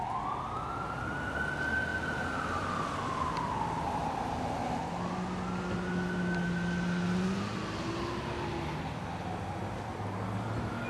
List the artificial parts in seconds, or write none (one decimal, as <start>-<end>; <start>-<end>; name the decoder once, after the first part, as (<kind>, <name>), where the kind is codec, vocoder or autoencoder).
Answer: none